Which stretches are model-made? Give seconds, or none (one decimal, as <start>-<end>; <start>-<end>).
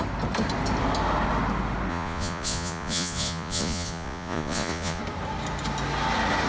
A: 1.9-5.0